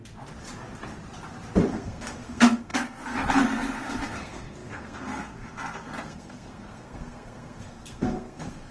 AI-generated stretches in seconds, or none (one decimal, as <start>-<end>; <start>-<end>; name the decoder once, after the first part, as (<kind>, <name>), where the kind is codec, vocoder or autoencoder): 1.7-8.7 (codec, SNAC)